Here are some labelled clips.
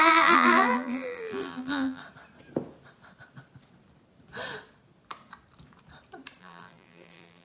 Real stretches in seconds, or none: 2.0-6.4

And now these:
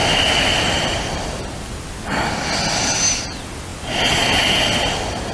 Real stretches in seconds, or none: 0.0-5.3

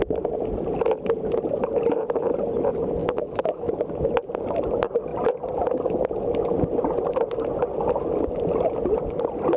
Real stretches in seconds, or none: 0.0-3.0; 3.7-9.6

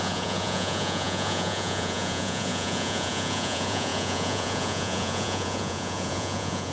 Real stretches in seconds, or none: none

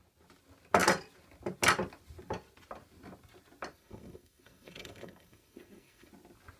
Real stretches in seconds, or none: 0.0-3.7; 6.1-6.6

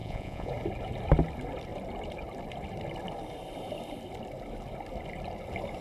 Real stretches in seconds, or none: 0.5-5.8

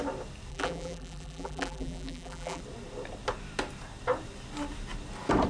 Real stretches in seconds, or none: 0.0-0.5; 2.6-5.5